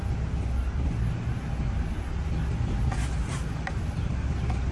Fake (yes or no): no